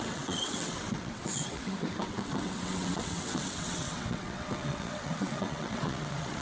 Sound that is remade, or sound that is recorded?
remade